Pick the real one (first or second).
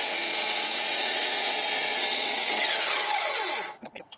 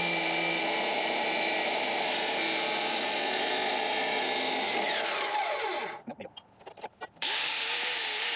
second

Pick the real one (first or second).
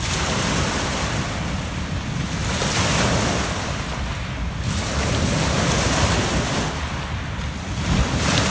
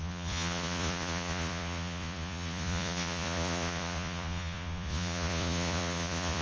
first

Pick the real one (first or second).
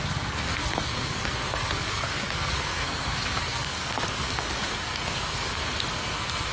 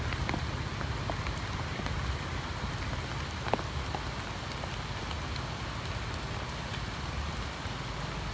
second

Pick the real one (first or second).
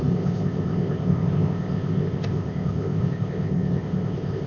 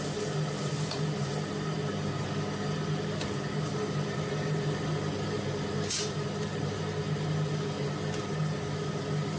second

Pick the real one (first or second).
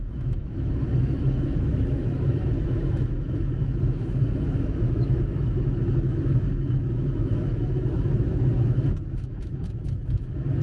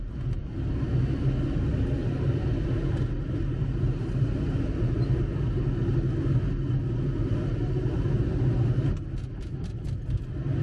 second